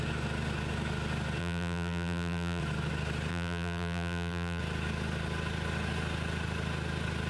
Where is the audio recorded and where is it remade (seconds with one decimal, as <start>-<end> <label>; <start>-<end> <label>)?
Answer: 0.0-1.4 recorded; 1.4-2.6 remade; 2.6-3.3 recorded; 3.3-4.6 remade; 4.6-7.3 recorded